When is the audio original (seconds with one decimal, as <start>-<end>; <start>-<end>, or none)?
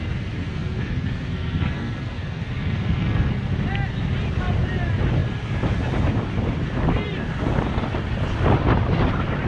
0.0-0.4; 3.5-9.5